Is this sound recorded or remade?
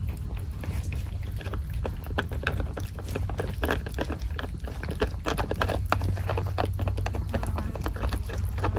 recorded